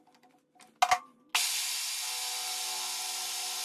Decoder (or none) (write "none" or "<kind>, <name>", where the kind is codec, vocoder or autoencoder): none